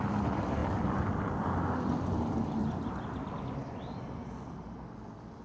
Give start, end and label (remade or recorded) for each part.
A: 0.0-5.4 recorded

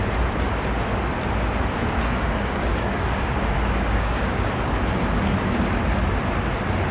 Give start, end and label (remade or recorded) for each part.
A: 0.0-1.8 recorded; 1.8-4.5 remade; 4.5-6.9 recorded

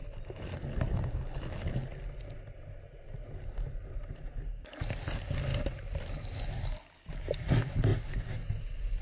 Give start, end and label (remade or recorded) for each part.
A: 0.0-9.0 recorded

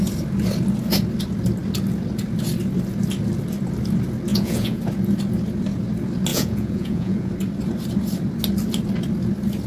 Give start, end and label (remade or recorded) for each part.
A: 0.0-4.3 recorded; 4.3-4.8 remade; 4.8-6.3 recorded; 6.3-7.3 remade; 7.3-9.7 recorded

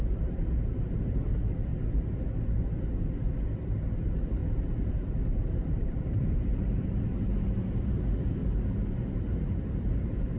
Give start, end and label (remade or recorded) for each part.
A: 0.0-1.7 remade; 1.7-2.8 recorded; 2.8-4.4 remade; 4.4-4.9 recorded; 4.9-8.4 remade; 8.4-9.1 recorded; 9.1-10.4 remade

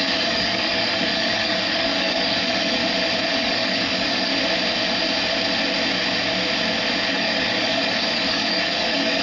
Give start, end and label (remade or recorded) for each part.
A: 0.0-2.8 remade; 2.8-3.4 recorded; 3.4-4.3 remade; 4.3-7.1 recorded; 7.1-9.2 remade